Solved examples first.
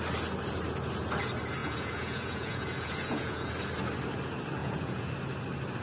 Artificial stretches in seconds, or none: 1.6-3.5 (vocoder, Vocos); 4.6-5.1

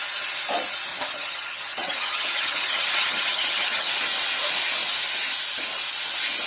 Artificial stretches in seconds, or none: 0.9-3.9 (vocoder, HiFi-GAN)

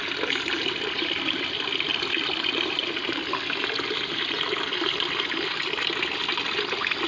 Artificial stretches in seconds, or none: none

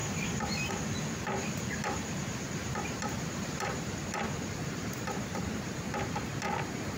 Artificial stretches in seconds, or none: 0.0-0.7 (vocoder, BigVGAN v2); 2.6-3.9; 4.6-5.7

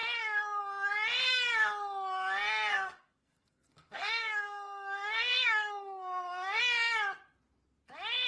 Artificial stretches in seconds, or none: 0.0-0.6 (codec, SNAC); 2.7-6.6

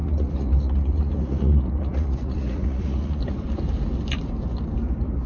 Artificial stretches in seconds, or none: 0.0-3.2 (vocoder, Vocos)